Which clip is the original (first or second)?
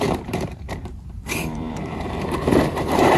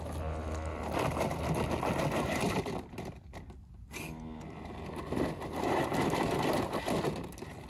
second